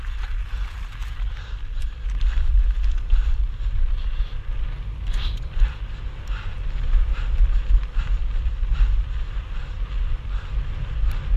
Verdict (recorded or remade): remade